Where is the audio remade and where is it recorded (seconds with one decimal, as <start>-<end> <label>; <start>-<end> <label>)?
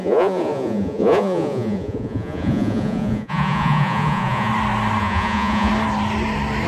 0.0-4.5 remade; 4.5-5.0 recorded; 5.0-5.7 remade; 5.7-6.7 recorded